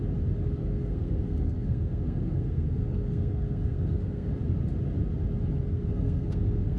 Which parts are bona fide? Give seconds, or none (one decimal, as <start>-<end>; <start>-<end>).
0.0-0.6; 4.3-5.7